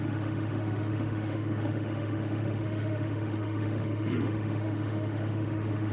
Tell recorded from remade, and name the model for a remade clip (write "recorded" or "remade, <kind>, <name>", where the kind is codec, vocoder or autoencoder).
remade, autoencoder, DAC-VAE